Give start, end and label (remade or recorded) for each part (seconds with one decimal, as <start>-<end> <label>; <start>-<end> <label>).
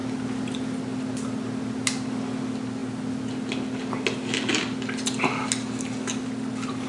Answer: 0.0-6.9 recorded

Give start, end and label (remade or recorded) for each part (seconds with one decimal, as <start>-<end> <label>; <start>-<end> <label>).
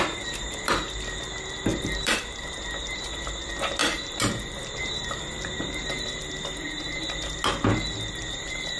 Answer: 0.0-1.7 recorded; 1.7-2.2 remade; 2.2-3.8 recorded; 3.8-5.9 remade; 5.9-8.8 recorded